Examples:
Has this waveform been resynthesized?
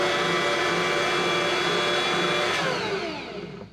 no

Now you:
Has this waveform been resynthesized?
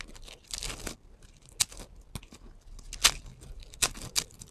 no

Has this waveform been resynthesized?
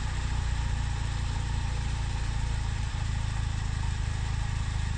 yes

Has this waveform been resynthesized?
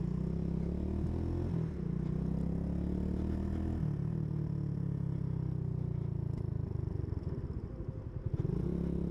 no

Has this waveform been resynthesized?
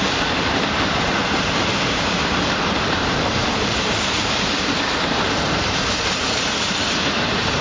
yes